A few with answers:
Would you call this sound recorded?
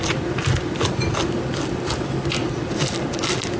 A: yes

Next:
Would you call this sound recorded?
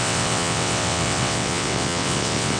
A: no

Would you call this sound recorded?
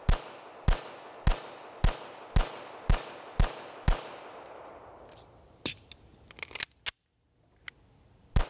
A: yes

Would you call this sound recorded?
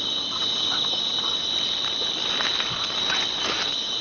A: yes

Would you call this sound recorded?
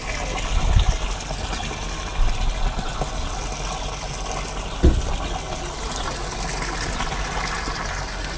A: yes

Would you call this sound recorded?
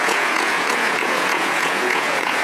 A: no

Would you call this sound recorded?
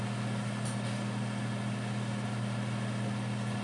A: yes